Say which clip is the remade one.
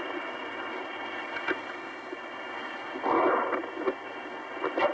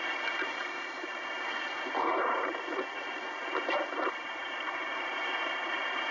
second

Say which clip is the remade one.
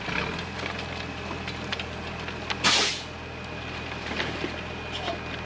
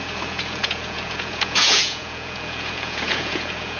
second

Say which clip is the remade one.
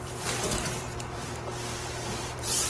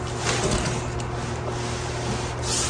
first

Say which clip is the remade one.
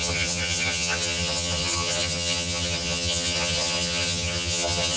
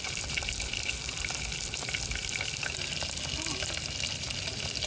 first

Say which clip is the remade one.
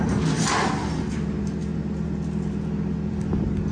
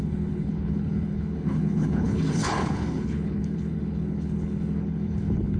second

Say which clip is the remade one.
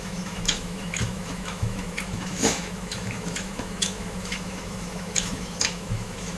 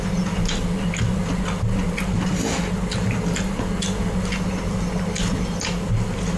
first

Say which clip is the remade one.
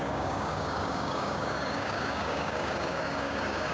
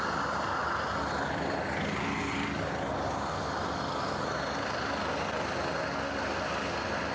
first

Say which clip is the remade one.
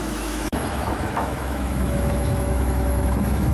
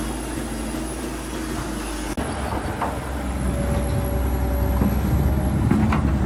first